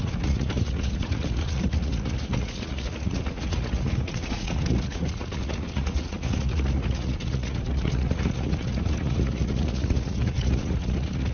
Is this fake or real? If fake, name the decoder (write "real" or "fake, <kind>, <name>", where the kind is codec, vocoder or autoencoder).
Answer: fake, vocoder, Vocos